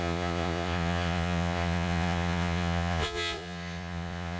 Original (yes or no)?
no